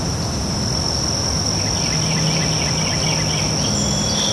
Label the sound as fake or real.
real